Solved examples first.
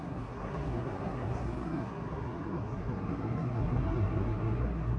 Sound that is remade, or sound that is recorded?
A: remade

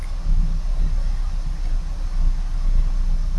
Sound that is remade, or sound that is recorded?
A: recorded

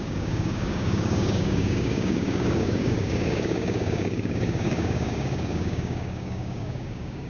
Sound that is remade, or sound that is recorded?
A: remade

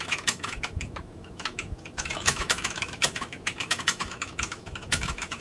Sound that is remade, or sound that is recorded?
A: remade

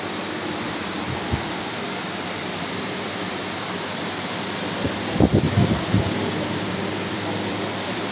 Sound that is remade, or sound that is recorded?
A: remade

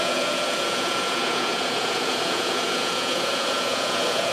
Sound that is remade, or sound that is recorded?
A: remade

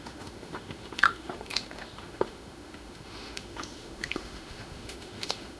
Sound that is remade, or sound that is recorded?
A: remade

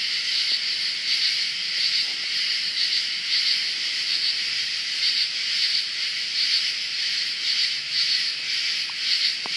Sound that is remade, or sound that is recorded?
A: remade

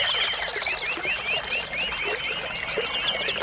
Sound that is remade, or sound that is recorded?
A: recorded